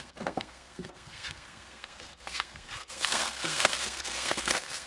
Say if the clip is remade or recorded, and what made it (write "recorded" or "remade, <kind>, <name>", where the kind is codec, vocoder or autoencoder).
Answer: remade, codec, SNAC